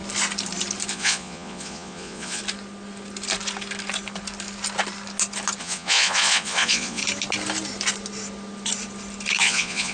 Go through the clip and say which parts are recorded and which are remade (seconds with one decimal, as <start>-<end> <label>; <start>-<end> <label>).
0.0-0.9 recorded; 0.9-2.4 remade; 2.4-5.6 recorded; 5.6-7.0 remade; 7.0-9.4 recorded; 9.4-9.9 remade